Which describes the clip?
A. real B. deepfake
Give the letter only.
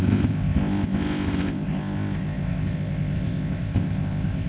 B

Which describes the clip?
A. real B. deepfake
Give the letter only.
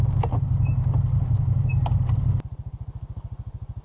A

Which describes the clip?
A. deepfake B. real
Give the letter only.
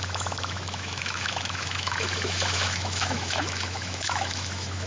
A